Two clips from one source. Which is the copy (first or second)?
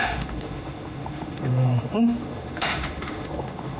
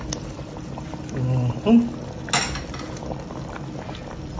first